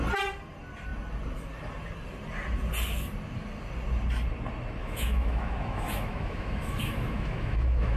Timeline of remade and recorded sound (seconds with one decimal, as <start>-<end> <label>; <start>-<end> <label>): 0.0-4.8 recorded; 4.8-8.0 remade